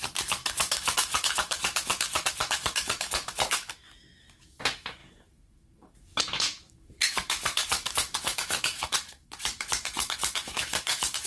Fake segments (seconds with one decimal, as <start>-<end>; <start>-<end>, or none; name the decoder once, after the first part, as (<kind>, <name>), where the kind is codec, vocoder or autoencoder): 0.0-11.3 (autoencoder, DAC-VAE)